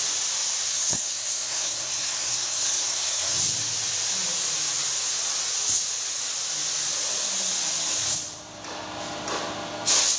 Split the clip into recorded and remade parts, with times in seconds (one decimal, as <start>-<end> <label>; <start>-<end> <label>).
0.0-0.7 recorded; 0.7-3.4 remade; 3.4-10.2 recorded